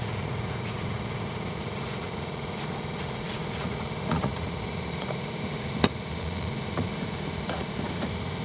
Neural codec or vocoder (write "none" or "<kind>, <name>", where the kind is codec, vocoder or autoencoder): vocoder, Vocos